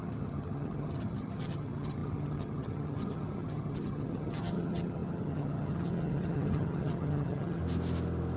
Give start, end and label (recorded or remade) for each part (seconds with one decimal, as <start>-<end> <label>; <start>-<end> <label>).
0.0-7.6 remade; 7.6-8.4 recorded